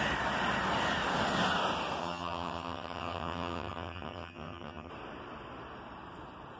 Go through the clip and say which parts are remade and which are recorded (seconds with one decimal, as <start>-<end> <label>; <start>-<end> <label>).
0.0-2.0 recorded; 2.0-4.9 remade; 4.9-6.6 recorded